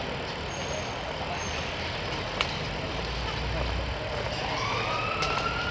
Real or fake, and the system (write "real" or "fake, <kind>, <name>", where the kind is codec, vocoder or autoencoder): real